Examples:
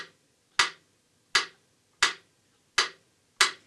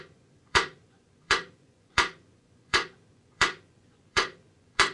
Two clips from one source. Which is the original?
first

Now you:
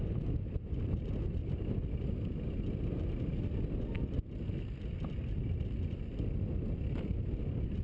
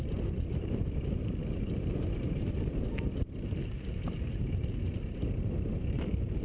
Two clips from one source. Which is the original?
first